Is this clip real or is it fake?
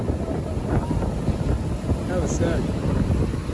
real